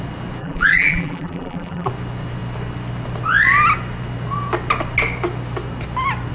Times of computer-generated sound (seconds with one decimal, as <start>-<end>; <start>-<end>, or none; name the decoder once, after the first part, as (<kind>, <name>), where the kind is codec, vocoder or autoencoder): 0.4-1.9 (vocoder, BigVGAN v2)